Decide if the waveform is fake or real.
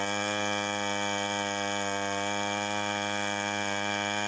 real